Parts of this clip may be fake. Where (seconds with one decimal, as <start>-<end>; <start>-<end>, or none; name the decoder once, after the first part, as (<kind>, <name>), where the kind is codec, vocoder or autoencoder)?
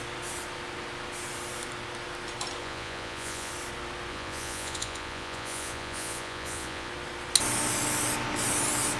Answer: 2.6-3.5 (vocoder, Vocos); 4.1-6.9